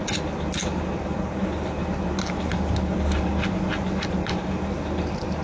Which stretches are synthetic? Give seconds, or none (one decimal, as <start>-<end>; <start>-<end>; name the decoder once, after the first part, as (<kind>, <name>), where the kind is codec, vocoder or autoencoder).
none